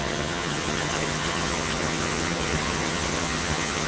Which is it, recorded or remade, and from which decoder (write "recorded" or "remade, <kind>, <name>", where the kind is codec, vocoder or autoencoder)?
remade, vocoder, HiFi-GAN